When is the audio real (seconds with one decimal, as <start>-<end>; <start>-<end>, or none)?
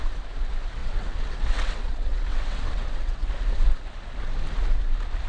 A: 0.0-0.8; 3.3-5.3